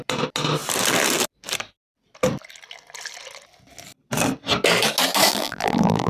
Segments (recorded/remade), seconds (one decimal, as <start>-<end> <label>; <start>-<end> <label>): 0.0-5.3 recorded; 5.3-6.1 remade

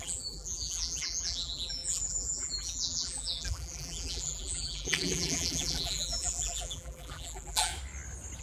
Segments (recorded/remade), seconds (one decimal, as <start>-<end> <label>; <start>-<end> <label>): 0.0-7.7 remade; 7.7-8.4 recorded

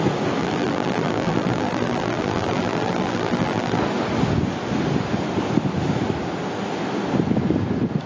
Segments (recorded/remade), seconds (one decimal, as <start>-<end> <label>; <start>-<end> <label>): 0.0-0.4 recorded; 0.4-3.8 remade; 3.8-8.1 recorded

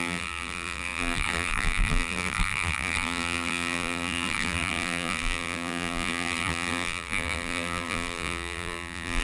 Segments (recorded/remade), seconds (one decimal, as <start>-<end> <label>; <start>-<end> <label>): 0.0-9.2 remade

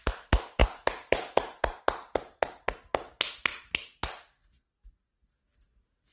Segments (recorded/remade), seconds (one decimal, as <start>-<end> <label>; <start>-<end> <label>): 0.0-0.6 recorded; 0.6-1.8 remade; 1.8-6.1 recorded

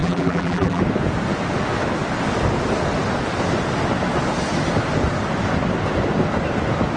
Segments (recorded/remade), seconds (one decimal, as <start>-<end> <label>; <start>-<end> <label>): 0.0-0.8 remade; 0.8-7.0 recorded